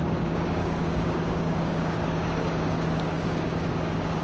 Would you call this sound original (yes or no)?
no